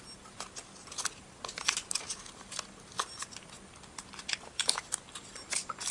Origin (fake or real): real